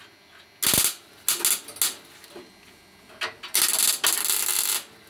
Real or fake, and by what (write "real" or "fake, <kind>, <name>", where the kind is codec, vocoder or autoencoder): real